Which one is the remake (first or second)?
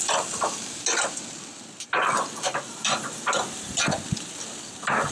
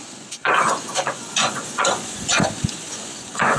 second